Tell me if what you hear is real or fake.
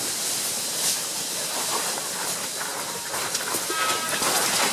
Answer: real